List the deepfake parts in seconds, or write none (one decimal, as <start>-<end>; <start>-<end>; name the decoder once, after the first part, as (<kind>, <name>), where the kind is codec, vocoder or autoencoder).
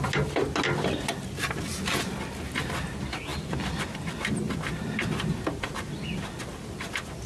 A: none